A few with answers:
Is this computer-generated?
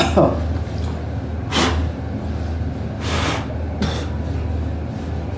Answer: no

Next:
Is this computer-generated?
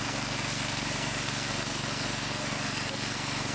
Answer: yes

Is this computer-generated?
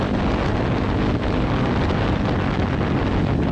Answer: no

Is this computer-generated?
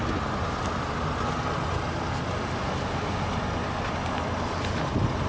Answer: no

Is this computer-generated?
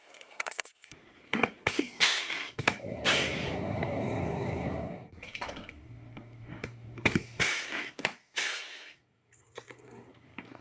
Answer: yes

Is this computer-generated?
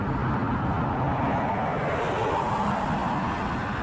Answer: no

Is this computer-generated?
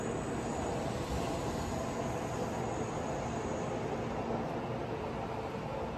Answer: no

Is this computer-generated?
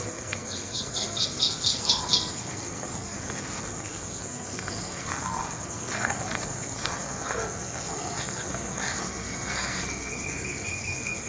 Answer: yes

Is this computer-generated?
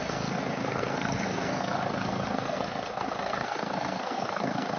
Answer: yes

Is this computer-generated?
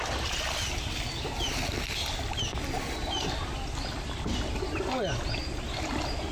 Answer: no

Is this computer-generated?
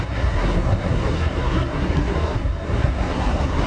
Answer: yes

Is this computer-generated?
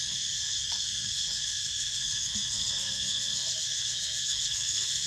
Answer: yes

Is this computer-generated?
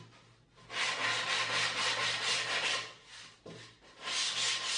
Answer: no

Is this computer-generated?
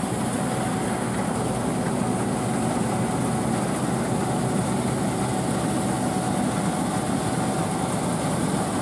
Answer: no